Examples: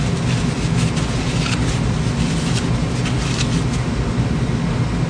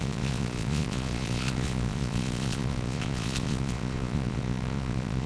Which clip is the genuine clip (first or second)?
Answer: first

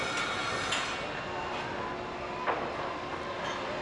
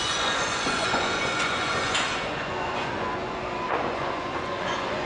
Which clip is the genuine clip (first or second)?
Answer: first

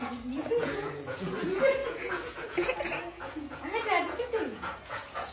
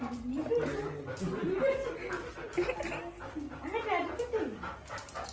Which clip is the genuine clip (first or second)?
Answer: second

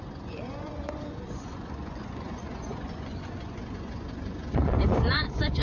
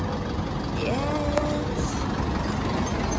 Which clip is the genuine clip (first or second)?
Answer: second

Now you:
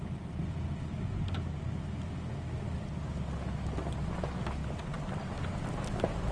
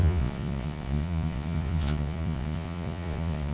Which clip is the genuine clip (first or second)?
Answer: first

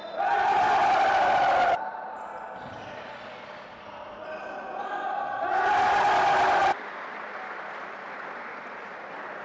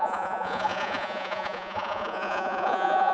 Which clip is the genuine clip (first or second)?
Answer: first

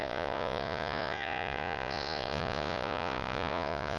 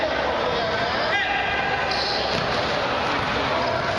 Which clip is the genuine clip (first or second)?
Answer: second